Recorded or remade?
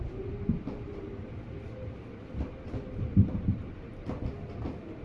recorded